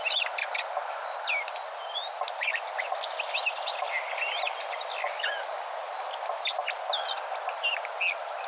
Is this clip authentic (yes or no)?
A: yes